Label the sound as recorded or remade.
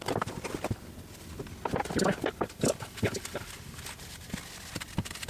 recorded